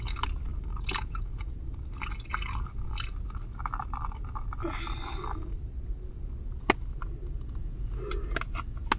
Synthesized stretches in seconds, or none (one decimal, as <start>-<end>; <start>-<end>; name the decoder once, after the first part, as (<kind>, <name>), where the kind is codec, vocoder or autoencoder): none